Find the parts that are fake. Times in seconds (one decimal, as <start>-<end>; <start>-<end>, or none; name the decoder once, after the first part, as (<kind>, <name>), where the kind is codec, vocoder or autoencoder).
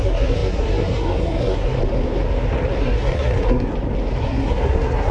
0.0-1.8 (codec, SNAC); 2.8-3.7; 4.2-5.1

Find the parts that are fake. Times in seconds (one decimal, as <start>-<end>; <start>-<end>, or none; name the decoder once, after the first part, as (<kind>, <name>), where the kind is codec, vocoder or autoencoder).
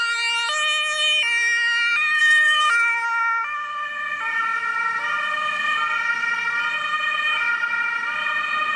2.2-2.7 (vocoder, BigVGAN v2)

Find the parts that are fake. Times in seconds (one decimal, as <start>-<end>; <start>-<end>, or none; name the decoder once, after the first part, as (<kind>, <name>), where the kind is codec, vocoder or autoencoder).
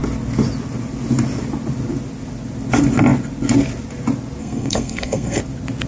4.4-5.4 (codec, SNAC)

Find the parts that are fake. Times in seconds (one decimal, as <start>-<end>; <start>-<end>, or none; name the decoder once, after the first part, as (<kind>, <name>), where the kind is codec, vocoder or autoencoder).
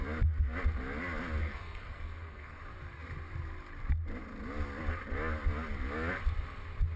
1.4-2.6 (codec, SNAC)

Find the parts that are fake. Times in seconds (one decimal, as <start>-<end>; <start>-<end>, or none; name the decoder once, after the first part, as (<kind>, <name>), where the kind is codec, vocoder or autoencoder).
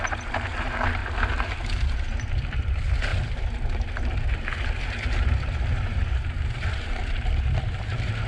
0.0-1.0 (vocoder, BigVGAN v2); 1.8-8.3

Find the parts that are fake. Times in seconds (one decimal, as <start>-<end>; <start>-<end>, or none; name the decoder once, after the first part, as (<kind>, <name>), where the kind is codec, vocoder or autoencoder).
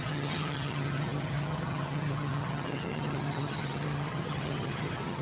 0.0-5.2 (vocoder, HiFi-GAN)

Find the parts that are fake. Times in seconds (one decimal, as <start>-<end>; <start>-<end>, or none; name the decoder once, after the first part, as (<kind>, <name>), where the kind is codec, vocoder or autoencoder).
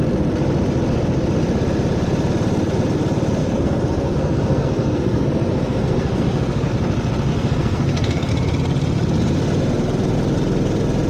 3.4-6.7 (codec, SNAC); 7.3-8.3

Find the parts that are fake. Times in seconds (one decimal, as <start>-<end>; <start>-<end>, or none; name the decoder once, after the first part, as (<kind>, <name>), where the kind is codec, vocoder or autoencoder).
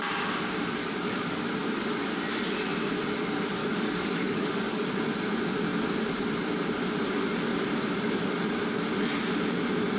0.8-1.4 (codec, DAC); 3.6-4.9